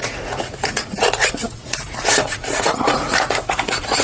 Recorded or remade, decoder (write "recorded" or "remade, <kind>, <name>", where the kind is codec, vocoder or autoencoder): remade, vocoder, Vocos